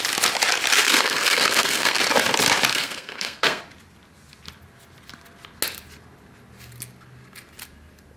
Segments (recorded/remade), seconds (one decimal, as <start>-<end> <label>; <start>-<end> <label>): 0.0-0.8 recorded; 0.8-2.0 remade; 2.0-2.7 recorded; 2.7-3.6 remade; 3.6-8.2 recorded